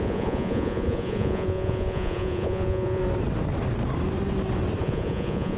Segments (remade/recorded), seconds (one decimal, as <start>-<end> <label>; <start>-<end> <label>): 0.0-3.0 remade; 3.0-4.8 recorded; 4.8-5.6 remade